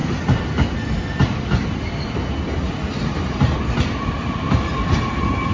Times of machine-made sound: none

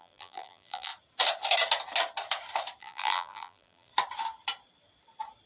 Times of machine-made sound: 0.0-0.9 (vocoder, BigVGAN v2); 2.8-3.9

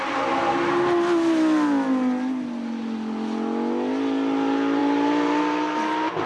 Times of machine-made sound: none

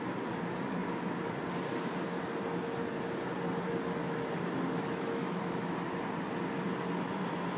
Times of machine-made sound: 4.0-5.6 (autoencoder, DAC-VAE)

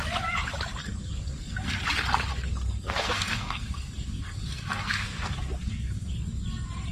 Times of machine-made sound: 0.8-1.8 (codec, SNAC); 2.3-6.1

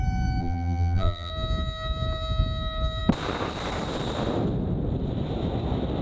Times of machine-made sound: 0.4-1.3 (vocoder, BigVGAN v2)

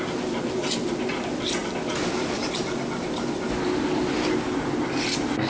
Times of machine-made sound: none